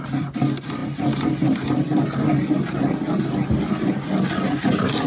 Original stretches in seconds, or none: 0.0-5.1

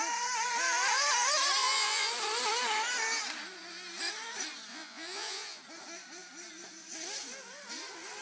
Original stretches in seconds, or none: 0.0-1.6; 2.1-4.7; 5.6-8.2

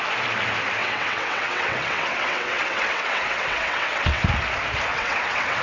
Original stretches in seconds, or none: 0.0-0.8; 4.2-4.9

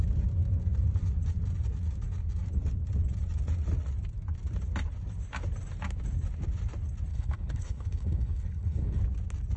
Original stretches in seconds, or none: 0.0-7.1; 9.0-9.6

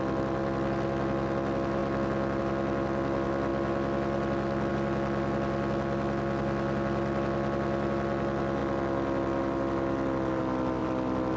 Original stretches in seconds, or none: 0.0-8.6; 10.4-10.8